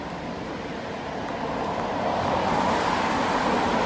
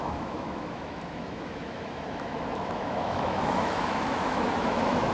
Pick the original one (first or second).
first